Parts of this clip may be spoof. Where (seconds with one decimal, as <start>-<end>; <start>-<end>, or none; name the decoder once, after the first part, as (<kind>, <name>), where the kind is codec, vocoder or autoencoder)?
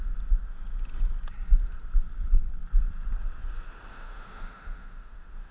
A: 3.9-5.5 (autoencoder, DAC-VAE)